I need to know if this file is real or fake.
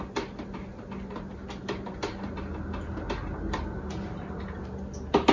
real